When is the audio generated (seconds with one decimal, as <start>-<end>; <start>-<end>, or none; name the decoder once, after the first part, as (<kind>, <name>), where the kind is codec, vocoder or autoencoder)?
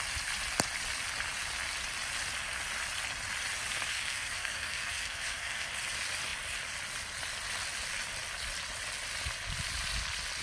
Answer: 3.9-5.7 (codec, SNAC)